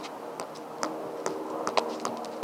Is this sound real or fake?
real